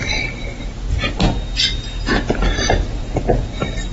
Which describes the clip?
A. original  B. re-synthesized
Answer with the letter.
A